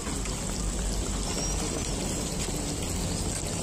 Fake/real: real